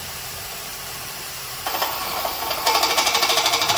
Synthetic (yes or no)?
yes